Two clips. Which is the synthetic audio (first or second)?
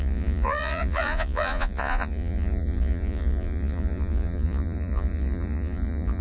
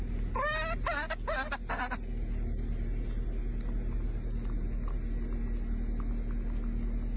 first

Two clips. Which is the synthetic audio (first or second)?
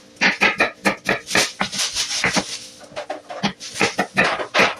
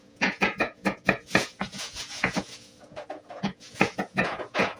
second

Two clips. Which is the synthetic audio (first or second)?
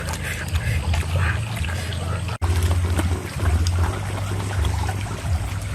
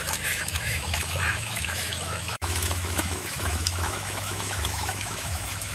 second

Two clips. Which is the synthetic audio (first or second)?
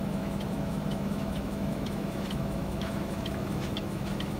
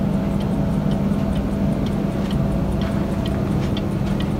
first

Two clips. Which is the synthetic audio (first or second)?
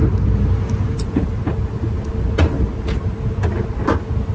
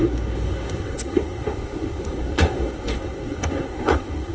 second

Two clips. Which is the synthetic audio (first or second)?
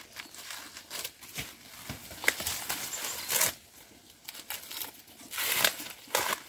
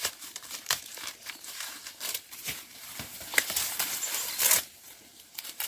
second